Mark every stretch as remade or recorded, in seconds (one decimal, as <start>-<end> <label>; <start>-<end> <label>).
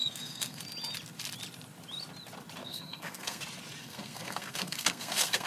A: 0.0-0.6 remade; 0.6-2.6 recorded; 2.6-3.4 remade; 3.4-3.8 recorded; 3.8-5.5 remade